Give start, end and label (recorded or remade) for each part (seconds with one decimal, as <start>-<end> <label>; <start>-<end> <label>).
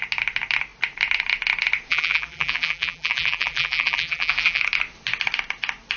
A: 0.0-1.9 recorded; 1.9-4.6 remade; 4.6-6.0 recorded